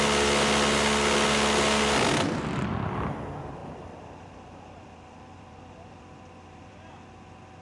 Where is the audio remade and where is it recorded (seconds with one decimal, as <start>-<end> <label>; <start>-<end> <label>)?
0.0-3.6 recorded; 3.6-6.9 remade; 6.9-7.6 recorded